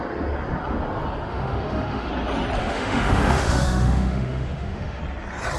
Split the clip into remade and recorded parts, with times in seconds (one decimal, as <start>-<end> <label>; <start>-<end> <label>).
0.0-1.3 recorded; 1.3-2.1 remade; 2.1-2.6 recorded; 2.6-5.0 remade; 5.0-5.6 recorded